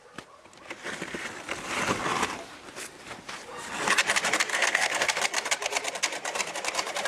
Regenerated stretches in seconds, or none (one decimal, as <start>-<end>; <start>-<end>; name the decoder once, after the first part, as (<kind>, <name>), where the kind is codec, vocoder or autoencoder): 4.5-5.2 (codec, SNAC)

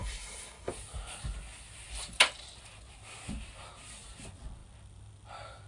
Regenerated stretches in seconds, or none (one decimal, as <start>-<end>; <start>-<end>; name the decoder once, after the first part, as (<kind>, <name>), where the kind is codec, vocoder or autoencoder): 0.0-0.7 (codec, SNAC)

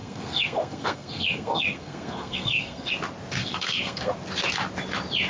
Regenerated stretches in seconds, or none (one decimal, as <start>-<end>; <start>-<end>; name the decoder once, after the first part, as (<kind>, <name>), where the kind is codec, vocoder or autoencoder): 0.0-2.9 (codec, SNAC); 3.4-4.1

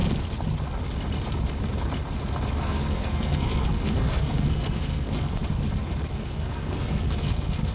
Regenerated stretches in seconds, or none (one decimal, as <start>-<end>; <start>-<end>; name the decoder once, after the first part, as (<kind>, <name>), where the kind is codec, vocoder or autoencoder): 2.6-5.4 (codec, SNAC); 6.1-7.7